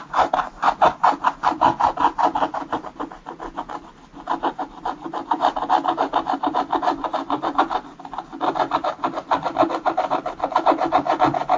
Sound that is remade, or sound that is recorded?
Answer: recorded